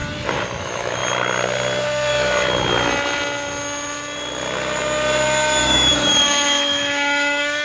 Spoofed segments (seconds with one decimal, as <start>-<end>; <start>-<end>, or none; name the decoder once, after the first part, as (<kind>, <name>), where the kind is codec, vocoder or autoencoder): 0.6-1.0 (autoencoder, DAC-VAE); 5.6-7.6